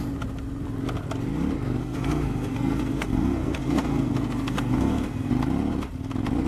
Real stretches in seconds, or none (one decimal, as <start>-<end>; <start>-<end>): 0.0-1.8; 5.3-6.5